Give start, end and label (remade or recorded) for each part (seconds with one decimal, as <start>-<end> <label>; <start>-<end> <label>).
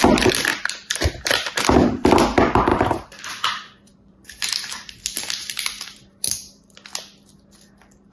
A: 0.0-0.5 recorded; 0.5-1.1 remade; 1.1-2.7 recorded; 2.7-3.3 remade; 3.3-3.9 recorded; 3.9-6.5 remade; 6.5-8.1 recorded